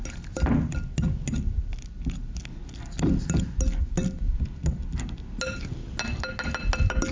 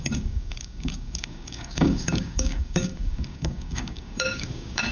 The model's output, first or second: second